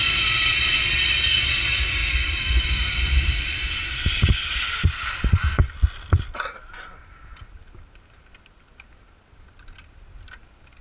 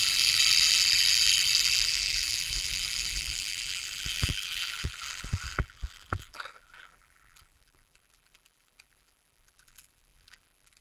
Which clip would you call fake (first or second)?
second